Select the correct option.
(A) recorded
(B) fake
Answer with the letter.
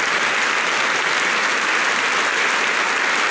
A